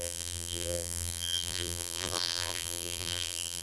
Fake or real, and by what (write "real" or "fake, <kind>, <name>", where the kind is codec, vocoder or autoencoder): fake, vocoder, BigVGAN v2